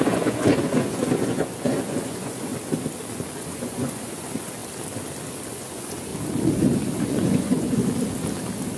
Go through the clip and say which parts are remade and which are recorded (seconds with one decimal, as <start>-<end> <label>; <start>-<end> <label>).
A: 0.0-2.5 remade; 2.5-3.4 recorded; 3.4-4.6 remade; 4.6-5.5 recorded; 5.5-6.1 remade; 6.1-7.0 recorded; 7.0-7.8 remade; 7.8-8.8 recorded